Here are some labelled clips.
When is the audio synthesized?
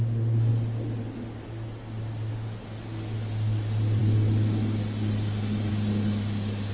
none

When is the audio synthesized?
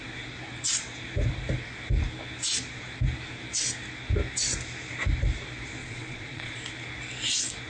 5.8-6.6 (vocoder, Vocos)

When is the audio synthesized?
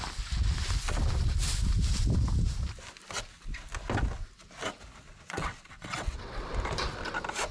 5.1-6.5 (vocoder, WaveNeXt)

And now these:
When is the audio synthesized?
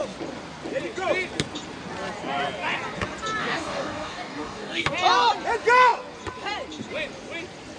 3.4-4.9 (codec, DAC)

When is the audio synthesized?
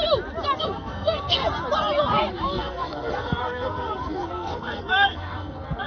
0.6-1.4 (codec, SNAC); 2.3-5.9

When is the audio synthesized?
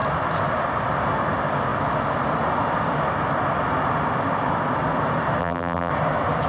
5.4-5.9 (vocoder, BigVGAN v2)